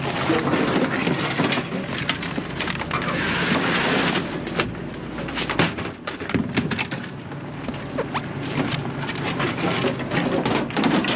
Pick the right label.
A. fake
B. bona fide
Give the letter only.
B